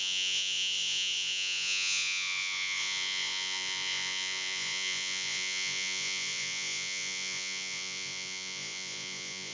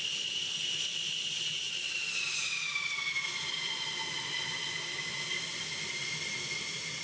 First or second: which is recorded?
second